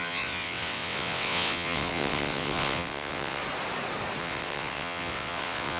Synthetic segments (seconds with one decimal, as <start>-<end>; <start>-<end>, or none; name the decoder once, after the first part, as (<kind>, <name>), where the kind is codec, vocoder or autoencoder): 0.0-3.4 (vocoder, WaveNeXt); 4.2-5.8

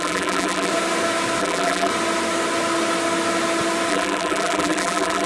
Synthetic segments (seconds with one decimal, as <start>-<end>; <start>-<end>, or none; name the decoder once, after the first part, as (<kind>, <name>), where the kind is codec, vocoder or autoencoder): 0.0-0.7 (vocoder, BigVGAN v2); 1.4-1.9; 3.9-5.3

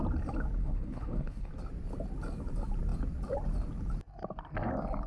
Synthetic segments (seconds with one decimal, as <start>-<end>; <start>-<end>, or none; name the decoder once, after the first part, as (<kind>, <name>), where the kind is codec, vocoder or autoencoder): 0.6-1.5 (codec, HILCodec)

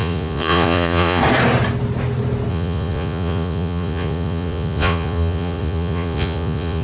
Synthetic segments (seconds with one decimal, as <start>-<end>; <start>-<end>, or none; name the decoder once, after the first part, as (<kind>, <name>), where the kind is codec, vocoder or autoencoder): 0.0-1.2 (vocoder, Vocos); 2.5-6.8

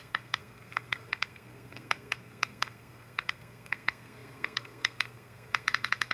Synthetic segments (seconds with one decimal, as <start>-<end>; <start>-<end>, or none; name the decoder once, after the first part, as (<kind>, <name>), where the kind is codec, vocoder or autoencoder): 0.0-6.1 (codec, SNAC)